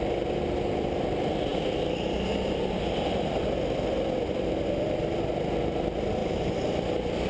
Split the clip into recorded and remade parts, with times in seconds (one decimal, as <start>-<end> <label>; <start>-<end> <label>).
0.0-7.3 recorded